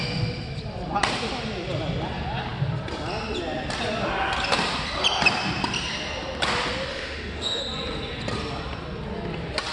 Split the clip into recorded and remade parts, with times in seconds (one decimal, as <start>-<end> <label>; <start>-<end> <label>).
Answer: 0.0-6.9 recorded; 6.9-7.6 remade; 7.6-9.7 recorded